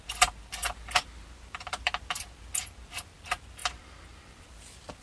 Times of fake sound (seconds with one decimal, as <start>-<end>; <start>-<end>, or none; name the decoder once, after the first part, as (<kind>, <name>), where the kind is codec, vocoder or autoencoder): 0.6-2.1 (vocoder, BigVGAN v2)